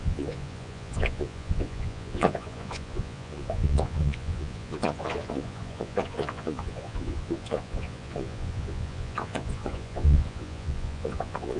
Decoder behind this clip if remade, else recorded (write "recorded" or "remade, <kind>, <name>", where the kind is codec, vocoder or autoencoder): remade, vocoder, Vocos